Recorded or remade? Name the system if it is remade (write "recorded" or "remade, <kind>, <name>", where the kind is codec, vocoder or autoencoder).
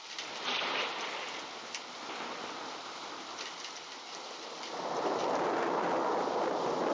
recorded